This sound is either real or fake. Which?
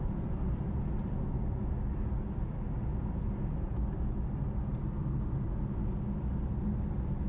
real